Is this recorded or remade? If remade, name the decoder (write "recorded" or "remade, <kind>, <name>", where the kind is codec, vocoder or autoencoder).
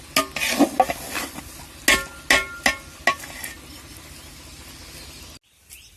recorded